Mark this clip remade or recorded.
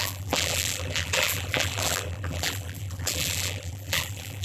remade